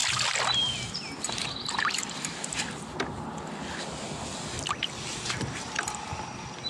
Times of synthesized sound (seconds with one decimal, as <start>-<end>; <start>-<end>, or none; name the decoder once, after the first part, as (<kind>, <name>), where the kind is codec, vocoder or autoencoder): 5.1-5.7 (vocoder, BigVGAN v2)

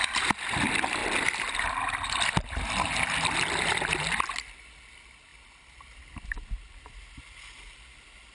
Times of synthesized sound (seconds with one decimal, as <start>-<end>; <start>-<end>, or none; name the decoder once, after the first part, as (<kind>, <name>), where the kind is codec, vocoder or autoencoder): none

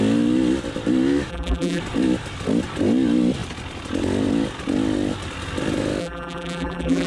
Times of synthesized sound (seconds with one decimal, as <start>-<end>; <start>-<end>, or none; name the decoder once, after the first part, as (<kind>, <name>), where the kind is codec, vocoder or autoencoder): 1.3-1.8 (vocoder, BigVGAN v2); 6.0-7.1